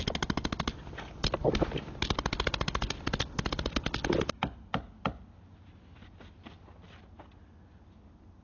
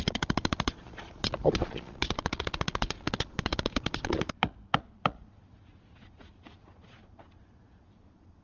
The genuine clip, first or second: first